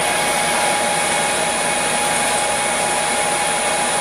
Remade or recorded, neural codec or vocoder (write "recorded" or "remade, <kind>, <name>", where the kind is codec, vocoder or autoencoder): recorded